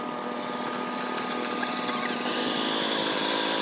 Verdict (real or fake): real